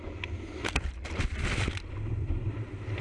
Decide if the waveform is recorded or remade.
recorded